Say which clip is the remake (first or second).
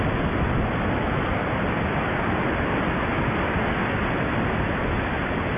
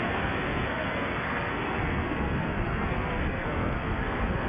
second